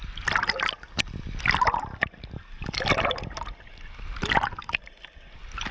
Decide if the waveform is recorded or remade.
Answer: recorded